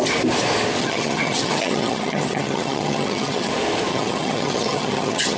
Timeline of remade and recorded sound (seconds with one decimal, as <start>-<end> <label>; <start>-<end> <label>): 0.0-0.8 recorded; 0.8-3.5 remade; 3.5-3.9 recorded; 3.9-5.4 remade